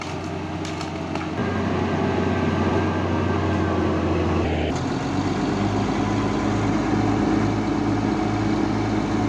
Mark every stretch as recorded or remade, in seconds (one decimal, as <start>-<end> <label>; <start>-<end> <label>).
0.0-9.3 recorded